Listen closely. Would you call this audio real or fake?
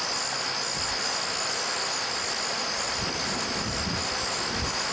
real